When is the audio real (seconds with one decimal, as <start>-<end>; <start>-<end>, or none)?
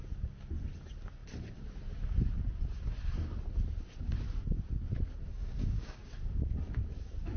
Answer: 0.0-5.3; 6.1-7.4